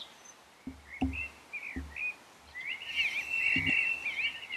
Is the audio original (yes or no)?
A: yes